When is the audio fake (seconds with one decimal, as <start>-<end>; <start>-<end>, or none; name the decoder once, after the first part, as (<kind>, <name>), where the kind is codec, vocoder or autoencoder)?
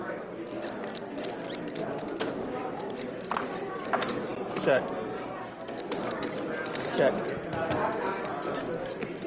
none